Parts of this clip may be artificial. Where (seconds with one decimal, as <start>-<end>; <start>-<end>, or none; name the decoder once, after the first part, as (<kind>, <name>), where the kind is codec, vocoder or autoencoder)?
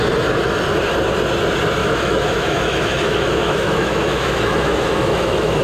1.8-5.6 (autoencoder, DAC-VAE)